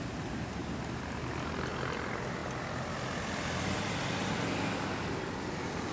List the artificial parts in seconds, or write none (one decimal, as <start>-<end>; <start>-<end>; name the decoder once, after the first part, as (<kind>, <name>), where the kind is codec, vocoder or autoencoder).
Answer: none